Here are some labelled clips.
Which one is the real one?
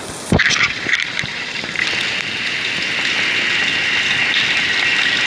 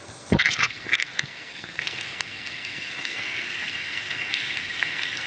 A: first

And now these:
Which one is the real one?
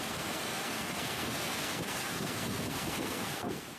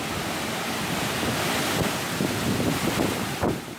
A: second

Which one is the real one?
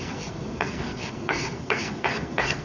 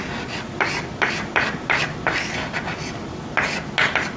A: second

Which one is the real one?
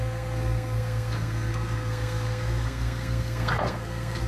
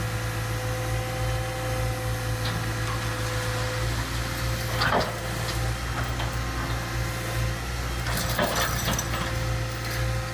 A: second